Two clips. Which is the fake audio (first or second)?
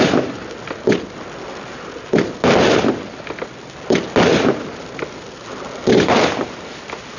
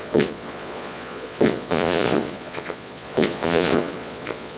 second